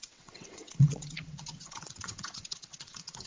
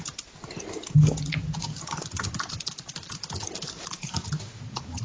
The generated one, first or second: first